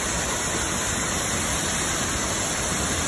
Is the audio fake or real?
real